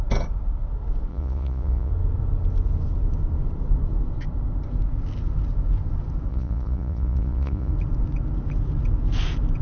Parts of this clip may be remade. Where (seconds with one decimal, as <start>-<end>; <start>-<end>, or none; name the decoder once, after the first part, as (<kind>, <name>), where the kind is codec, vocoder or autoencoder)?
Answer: 1.1-1.9 (vocoder, Vocos); 6.3-7.7